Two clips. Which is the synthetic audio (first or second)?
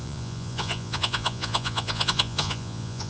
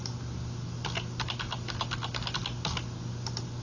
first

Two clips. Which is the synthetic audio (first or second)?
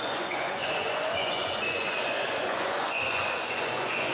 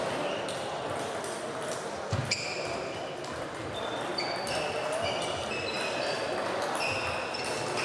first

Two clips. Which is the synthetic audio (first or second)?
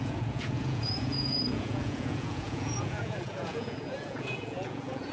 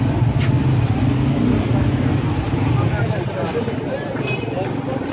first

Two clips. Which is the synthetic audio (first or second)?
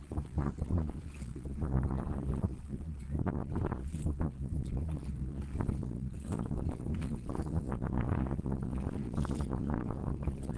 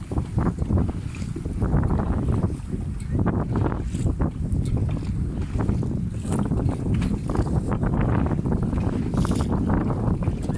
first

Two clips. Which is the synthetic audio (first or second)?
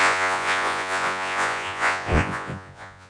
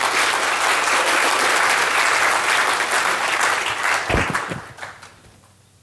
first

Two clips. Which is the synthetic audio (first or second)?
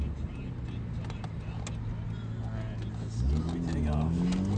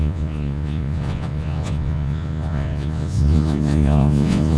second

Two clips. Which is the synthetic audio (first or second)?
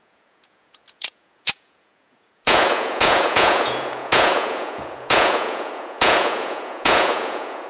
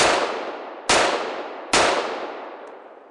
first